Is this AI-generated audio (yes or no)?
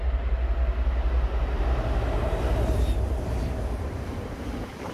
no